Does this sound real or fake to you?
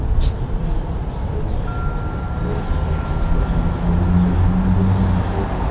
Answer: real